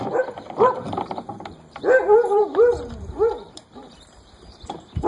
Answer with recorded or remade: remade